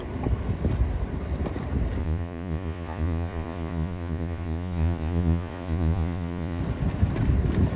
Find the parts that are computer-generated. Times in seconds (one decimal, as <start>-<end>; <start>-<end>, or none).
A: 2.0-6.6